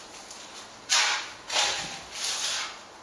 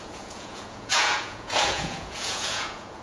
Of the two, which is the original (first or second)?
first